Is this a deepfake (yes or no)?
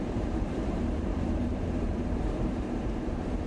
yes